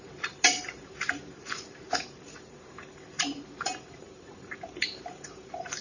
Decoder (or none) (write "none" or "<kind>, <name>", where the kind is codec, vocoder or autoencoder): vocoder, BigVGAN v2